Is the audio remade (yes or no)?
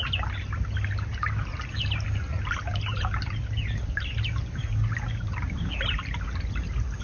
no